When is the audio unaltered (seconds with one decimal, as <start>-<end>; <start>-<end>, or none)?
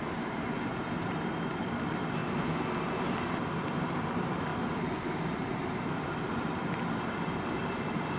2.2-3.7; 4.5-5.2